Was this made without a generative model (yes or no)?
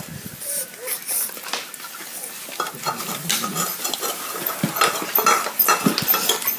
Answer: yes